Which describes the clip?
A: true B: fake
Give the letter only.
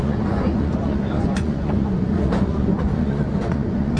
B